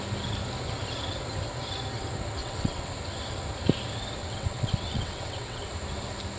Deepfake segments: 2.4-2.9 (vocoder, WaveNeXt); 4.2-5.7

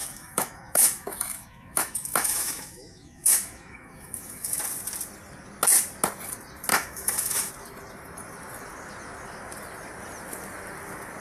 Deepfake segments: 0.0-4.6 (autoencoder, DAC-VAE); 6.7-7.5